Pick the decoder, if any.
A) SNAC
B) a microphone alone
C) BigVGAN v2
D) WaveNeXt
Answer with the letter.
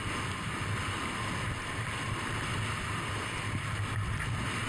B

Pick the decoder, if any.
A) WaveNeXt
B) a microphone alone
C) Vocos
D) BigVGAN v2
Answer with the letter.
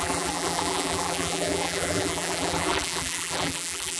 D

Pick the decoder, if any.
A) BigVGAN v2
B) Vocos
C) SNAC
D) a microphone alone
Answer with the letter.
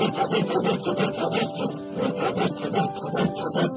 D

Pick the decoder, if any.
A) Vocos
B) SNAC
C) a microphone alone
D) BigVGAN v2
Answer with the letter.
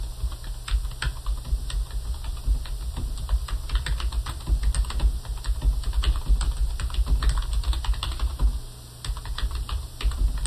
C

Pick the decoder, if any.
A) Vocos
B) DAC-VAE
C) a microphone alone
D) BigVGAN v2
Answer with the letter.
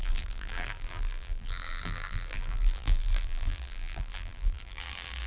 D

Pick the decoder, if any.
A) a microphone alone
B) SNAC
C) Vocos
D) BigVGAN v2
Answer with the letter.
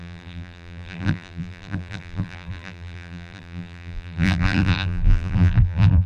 D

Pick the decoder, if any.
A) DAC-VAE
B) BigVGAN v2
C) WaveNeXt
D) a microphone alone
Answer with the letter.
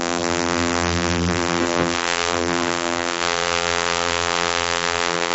B